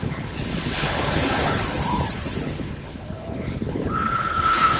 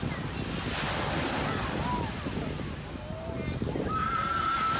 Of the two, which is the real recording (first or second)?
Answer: second